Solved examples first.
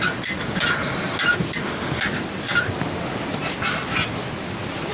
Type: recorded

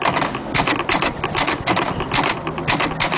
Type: recorded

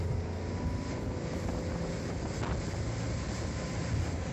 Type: recorded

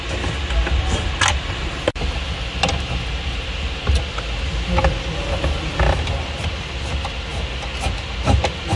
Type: recorded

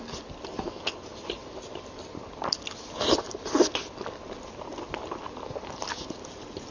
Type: recorded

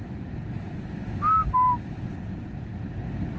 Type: recorded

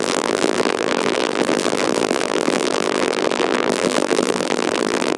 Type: remade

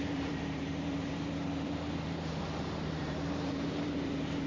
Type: remade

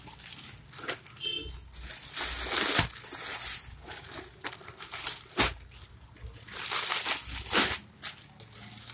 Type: recorded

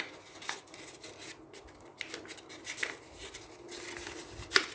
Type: recorded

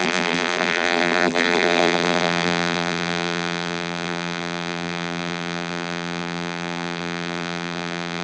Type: remade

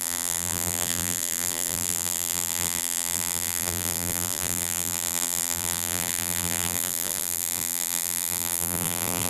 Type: remade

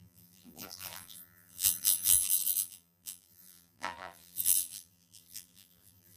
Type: remade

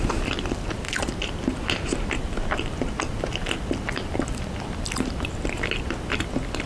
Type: recorded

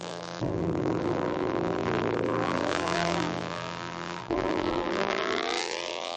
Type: remade